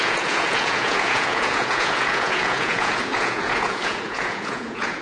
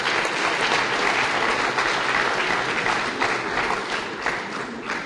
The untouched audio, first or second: second